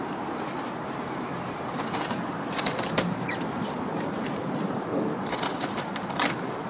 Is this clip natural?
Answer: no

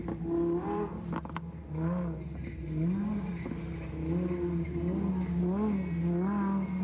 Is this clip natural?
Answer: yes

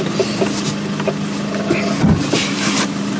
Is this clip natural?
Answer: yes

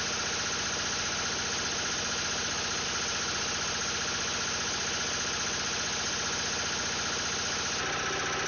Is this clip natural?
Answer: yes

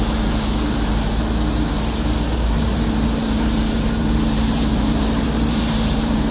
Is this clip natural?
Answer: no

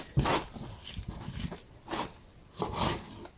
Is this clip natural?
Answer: yes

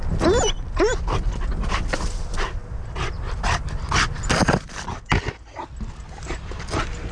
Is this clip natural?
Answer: yes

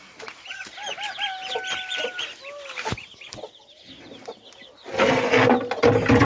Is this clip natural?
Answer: yes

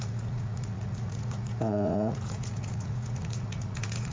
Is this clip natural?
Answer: no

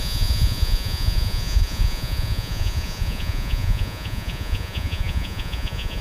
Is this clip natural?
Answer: no